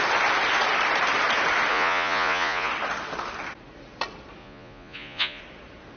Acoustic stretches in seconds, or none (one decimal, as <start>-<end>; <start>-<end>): 0.0-1.7; 2.7-4.4; 5.4-6.0